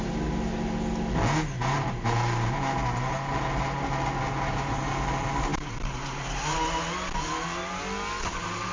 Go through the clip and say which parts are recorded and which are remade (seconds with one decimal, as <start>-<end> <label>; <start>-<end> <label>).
0.0-8.7 recorded